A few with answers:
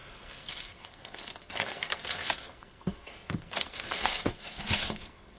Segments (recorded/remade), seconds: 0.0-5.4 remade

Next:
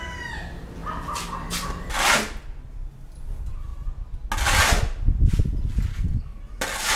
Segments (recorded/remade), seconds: 0.0-5.9 recorded; 5.9-6.4 remade; 6.4-7.0 recorded

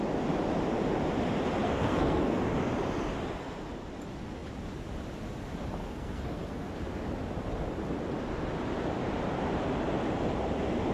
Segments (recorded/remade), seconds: 0.0-1.6 recorded; 1.6-2.4 remade; 2.4-5.8 recorded; 5.8-6.7 remade; 6.7-10.9 recorded

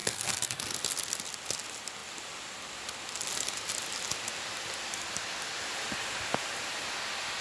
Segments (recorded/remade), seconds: 0.0-0.6 remade; 0.6-7.4 recorded